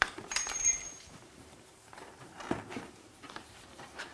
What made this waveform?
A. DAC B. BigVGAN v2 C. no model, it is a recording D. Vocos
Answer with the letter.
B